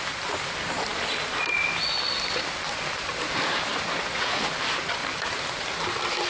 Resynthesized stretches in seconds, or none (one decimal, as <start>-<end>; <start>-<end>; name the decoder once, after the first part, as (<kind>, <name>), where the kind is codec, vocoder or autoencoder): 3.7-4.4 (vocoder, Vocos)